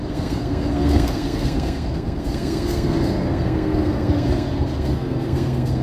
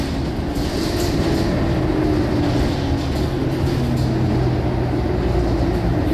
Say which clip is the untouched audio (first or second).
second